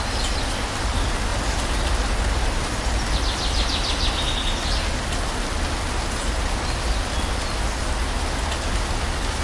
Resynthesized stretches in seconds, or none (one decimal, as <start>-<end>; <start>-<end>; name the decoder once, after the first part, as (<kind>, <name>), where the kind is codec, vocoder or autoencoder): 1.3-3.2 (vocoder, BigVGAN v2)